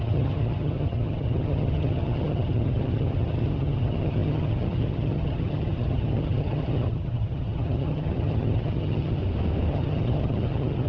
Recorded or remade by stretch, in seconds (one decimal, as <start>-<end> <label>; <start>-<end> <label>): 0.0-9.2 remade; 9.2-9.7 recorded; 9.7-10.9 remade